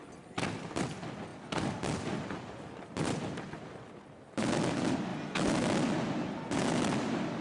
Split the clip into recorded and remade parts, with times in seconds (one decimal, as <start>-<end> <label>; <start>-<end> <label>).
0.0-7.4 recorded